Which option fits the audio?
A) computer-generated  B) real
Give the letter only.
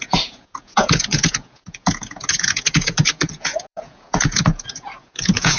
A